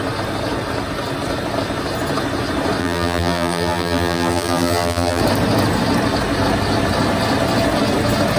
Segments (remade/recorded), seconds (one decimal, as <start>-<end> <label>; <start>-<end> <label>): 0.0-2.8 recorded; 2.8-5.2 remade; 5.2-8.4 recorded